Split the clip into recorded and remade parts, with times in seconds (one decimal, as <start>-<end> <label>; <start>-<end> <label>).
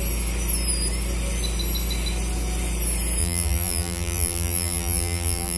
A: 0.0-3.2 recorded; 3.2-5.6 remade